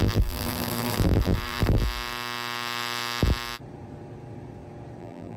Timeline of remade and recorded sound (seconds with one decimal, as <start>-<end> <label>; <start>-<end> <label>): 0.0-1.8 remade; 1.8-5.0 recorded; 5.0-5.4 remade